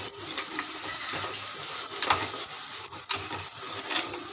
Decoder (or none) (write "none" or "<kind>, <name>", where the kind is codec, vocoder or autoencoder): none